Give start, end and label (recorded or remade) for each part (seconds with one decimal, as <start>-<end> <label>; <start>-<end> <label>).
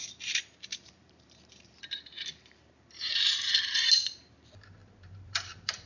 0.0-0.7 recorded; 0.7-4.2 remade; 4.2-4.8 recorded; 4.8-5.9 remade